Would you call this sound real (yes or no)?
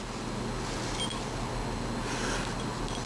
yes